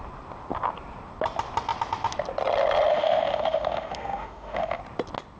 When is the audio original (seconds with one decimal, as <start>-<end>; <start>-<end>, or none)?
0.0-2.9; 4.8-5.4